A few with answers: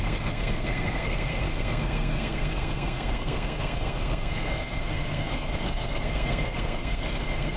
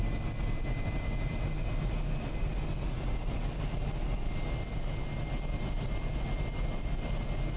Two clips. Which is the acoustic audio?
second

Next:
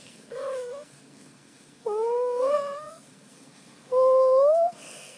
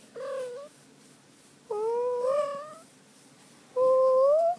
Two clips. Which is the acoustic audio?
second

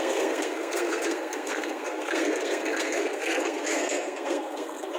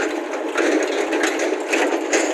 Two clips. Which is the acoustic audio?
second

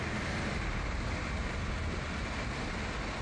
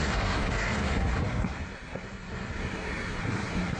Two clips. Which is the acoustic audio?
first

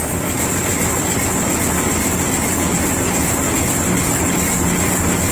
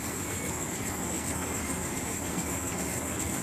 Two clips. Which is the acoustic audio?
first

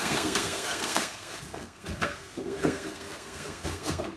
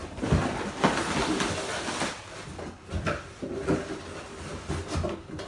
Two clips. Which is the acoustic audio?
second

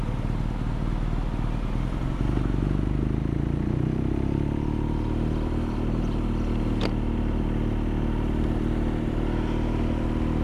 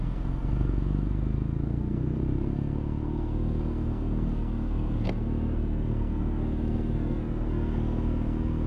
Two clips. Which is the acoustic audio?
first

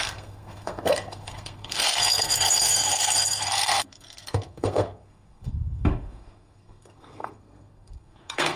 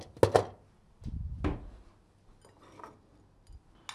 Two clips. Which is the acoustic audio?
second